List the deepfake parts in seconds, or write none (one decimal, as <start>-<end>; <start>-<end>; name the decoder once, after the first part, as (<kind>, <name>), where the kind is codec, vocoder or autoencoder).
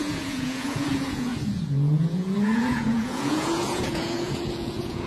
0.0-5.1 (vocoder, Vocos)